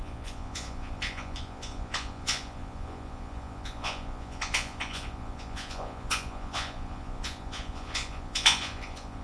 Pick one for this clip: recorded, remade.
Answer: remade